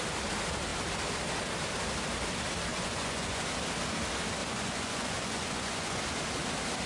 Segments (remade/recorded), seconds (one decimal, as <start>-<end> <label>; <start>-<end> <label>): 0.0-2.7 recorded; 2.7-3.4 remade; 3.4-4.4 recorded; 4.4-6.0 remade; 6.0-6.9 recorded